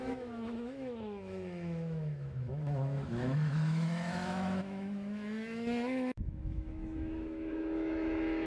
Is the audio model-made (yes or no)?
yes